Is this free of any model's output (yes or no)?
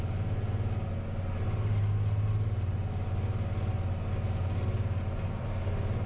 yes